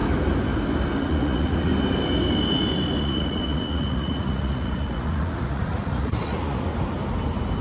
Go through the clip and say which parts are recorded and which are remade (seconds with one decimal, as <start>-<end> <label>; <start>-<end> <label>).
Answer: 0.0-1.0 recorded; 1.0-1.7 remade; 1.7-3.0 recorded; 3.0-6.7 remade; 6.7-7.6 recorded